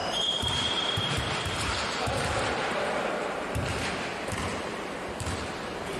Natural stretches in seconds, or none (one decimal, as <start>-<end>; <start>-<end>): 3.6-4.5; 5.1-6.0